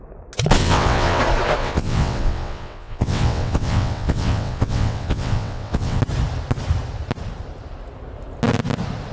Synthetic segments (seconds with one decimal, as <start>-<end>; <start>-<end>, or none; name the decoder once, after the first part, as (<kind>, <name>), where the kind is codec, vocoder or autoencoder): 0.6-1.2 (vocoder, WaveNeXt); 1.6-6.0